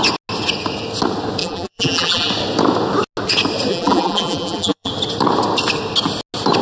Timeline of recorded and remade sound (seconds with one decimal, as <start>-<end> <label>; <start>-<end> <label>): 0.0-1.4 recorded; 1.4-2.3 remade; 2.3-3.7 recorded; 3.7-4.9 remade; 4.9-6.6 recorded

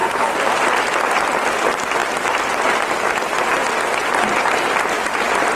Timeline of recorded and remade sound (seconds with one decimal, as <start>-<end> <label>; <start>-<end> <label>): 0.0-0.7 remade; 0.7-5.6 recorded

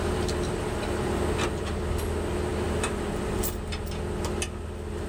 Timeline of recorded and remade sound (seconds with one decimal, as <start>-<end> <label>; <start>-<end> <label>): 0.0-1.8 remade; 1.8-2.5 recorded; 2.5-3.4 remade; 3.4-5.1 recorded

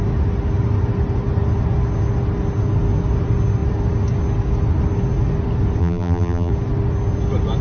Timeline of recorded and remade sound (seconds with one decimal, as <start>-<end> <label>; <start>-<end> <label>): 0.0-5.8 recorded; 5.8-6.5 remade; 6.5-7.6 recorded